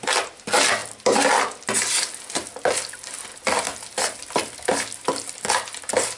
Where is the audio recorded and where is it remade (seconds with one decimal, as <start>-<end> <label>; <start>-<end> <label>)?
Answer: 0.0-6.2 recorded